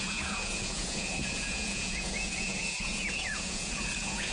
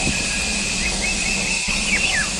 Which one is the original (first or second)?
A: second